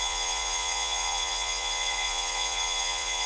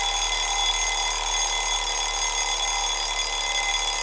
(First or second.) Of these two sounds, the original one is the second